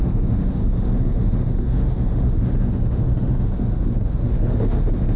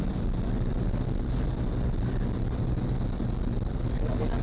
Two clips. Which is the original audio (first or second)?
second